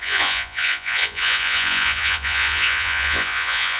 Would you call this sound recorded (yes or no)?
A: no